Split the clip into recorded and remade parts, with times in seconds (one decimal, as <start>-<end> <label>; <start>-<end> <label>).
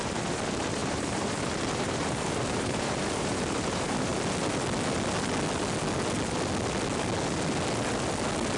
0.0-4.1 remade; 4.1-8.6 recorded